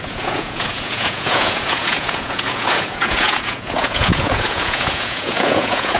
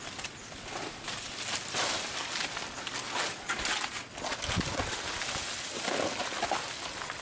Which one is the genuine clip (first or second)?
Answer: second